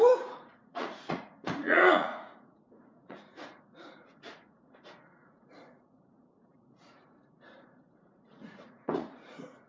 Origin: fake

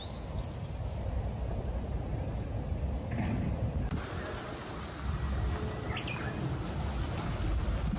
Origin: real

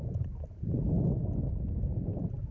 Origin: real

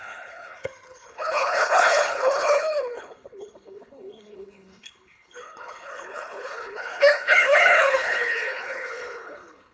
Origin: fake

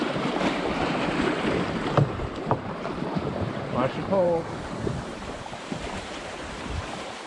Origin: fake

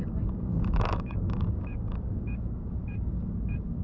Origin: fake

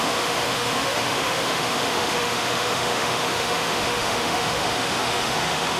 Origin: fake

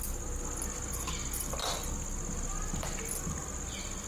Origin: real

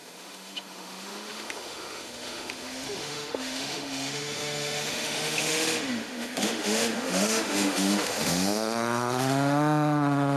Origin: fake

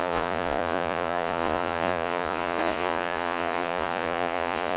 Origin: fake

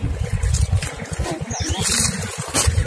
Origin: real